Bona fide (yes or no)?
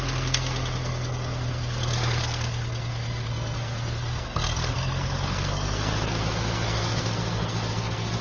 no